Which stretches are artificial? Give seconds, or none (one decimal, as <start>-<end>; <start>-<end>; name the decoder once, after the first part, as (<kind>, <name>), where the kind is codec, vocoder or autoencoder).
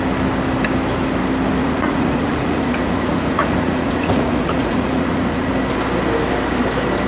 1.6-5.5 (vocoder, Vocos)